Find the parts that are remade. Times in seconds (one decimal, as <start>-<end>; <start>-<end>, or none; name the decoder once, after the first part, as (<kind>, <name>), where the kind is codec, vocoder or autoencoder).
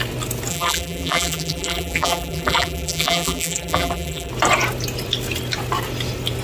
0.5-4.3 (vocoder, BigVGAN v2)